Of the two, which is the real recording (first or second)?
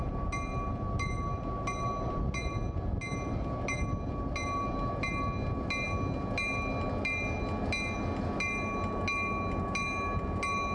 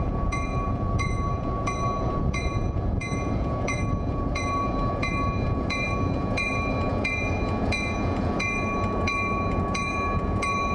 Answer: first